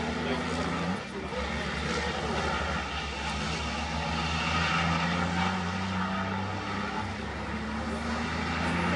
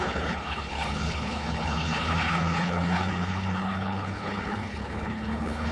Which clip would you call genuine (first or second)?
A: first